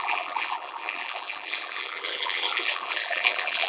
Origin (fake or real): fake